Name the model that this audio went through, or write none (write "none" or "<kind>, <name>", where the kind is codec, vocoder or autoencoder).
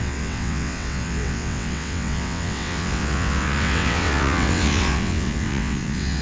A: vocoder, WaveNeXt